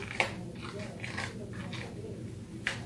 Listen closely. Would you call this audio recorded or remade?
recorded